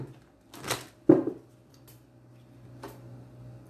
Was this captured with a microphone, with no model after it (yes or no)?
yes